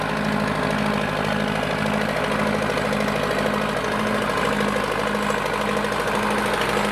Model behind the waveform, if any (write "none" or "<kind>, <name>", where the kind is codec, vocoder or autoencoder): none